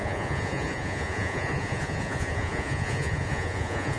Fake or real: fake